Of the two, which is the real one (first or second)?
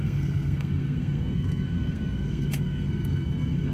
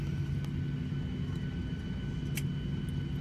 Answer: second